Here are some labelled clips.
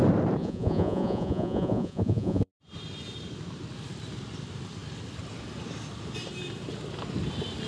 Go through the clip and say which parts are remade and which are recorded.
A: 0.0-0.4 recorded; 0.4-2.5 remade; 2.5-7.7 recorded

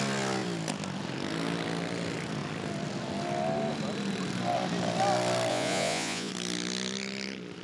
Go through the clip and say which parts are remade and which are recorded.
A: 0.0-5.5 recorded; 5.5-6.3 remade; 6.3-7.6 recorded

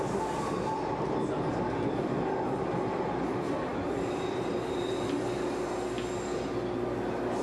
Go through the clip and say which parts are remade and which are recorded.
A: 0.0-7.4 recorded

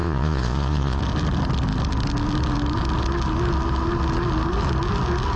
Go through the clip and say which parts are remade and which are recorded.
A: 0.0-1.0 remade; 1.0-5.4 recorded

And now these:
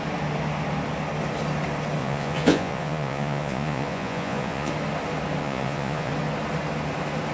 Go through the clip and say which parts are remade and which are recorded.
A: 0.0-2.0 recorded; 2.0-4.7 remade; 4.7-5.4 recorded; 5.4-6.1 remade; 6.1-7.3 recorded

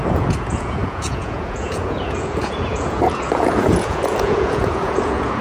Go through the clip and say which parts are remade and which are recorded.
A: 0.0-5.4 remade

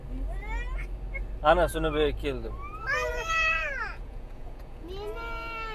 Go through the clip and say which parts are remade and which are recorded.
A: 0.0-3.1 recorded; 3.1-4.9 remade; 4.9-5.7 recorded

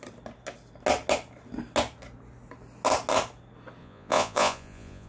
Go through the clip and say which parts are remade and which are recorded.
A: 0.0-3.8 recorded; 3.8-5.1 remade